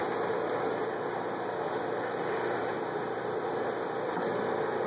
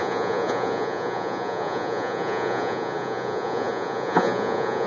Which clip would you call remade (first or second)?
second